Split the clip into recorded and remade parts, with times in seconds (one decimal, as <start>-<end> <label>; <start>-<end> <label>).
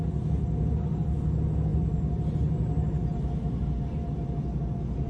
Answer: 0.0-5.1 recorded